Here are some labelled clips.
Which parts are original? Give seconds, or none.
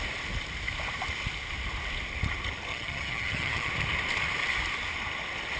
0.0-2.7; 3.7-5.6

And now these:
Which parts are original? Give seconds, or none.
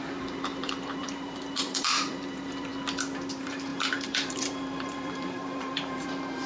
2.7-3.3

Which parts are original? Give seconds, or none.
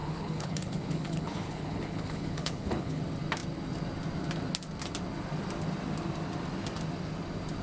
3.0-7.6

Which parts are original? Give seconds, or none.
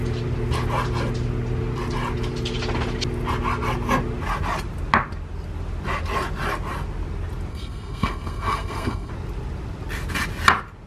0.0-7.5; 9.1-10.9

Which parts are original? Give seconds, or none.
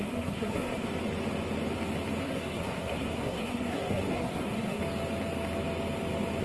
0.9-2.2; 4.8-6.4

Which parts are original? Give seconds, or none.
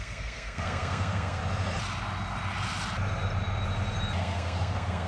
1.4-4.2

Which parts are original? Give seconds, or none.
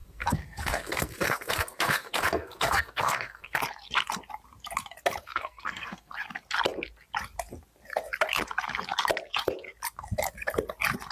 3.6-5.2; 6.1-11.1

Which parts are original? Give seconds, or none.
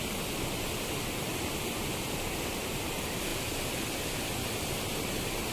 0.0-1.3; 2.6-5.5